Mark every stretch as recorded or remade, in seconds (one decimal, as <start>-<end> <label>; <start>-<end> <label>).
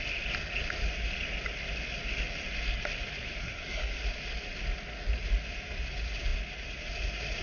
0.0-3.4 recorded; 3.4-4.0 remade; 4.0-7.4 recorded